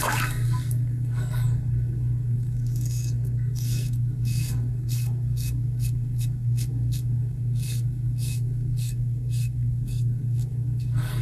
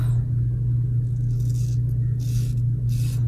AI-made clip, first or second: first